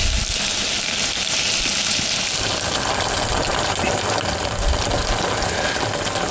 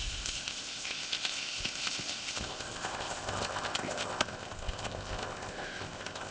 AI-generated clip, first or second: second